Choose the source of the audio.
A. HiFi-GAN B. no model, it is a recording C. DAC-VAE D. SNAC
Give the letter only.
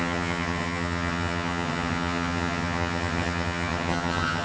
A